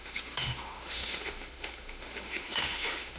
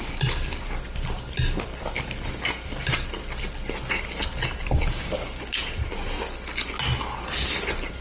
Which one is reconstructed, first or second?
first